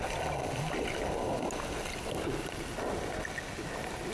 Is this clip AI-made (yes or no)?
no